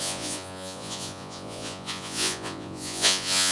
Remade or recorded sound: remade